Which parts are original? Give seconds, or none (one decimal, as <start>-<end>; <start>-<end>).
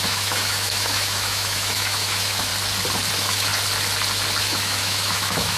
2.5-3.1; 3.5-4.4